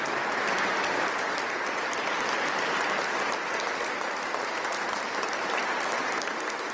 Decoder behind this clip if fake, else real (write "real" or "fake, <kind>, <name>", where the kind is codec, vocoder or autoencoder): real